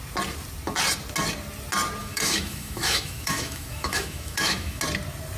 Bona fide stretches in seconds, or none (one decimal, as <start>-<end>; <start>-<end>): 0.0-2.0; 4.8-5.4